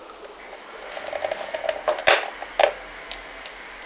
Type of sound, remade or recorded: recorded